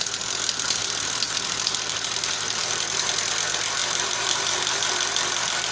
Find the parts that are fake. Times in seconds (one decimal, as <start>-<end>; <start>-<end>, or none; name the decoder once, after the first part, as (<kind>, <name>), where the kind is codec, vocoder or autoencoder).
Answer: 0.8-3.3 (vocoder, BigVGAN v2); 3.8-4.9